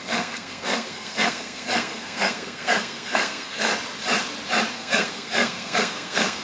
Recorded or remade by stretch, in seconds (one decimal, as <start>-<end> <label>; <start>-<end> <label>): 0.0-3.7 remade; 3.7-4.7 recorded; 4.7-6.4 remade